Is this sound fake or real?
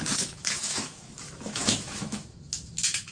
fake